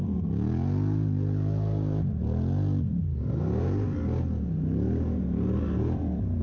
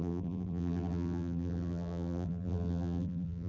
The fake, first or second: second